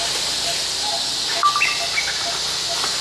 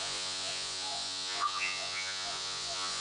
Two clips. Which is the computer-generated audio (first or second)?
second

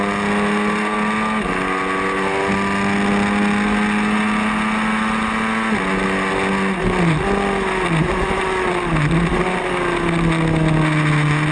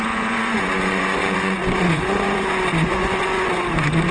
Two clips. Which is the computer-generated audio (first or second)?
second